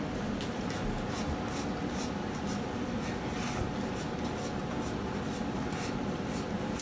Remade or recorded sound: recorded